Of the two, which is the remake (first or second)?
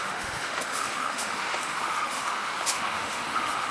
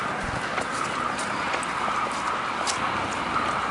first